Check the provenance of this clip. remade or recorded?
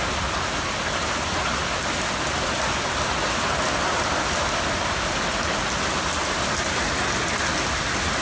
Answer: recorded